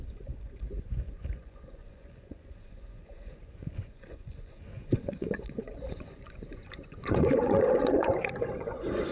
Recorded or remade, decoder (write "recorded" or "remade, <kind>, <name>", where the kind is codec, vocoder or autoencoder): remade, vocoder, Vocos